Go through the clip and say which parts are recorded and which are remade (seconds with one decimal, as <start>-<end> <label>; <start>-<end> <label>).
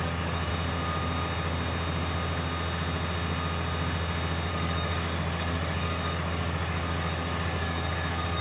0.0-0.5 remade; 0.5-4.5 recorded; 4.5-8.4 remade